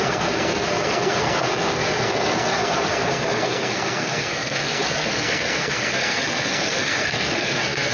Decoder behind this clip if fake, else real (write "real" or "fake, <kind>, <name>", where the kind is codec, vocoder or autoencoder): fake, codec, SNAC